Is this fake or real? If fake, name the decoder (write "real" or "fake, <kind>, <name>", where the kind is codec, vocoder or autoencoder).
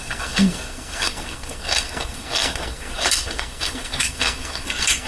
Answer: fake, codec, SNAC